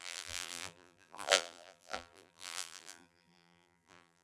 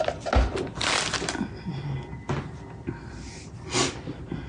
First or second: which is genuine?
second